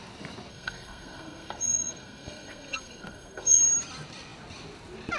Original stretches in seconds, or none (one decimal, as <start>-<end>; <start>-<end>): 0.0-0.5; 3.6-5.2